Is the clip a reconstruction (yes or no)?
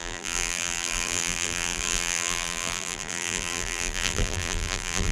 yes